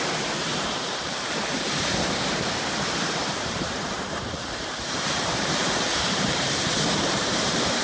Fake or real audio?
fake